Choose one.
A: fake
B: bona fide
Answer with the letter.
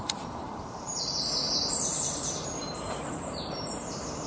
A